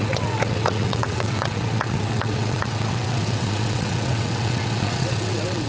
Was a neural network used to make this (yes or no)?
yes